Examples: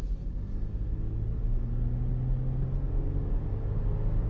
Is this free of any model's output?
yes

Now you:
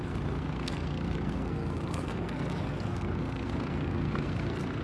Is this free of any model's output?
no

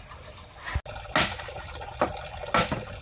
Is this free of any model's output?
yes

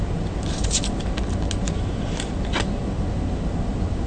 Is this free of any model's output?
yes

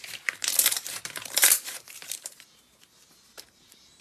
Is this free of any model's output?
no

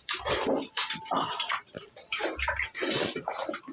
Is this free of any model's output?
no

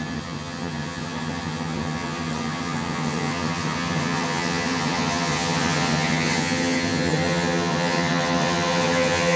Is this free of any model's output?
no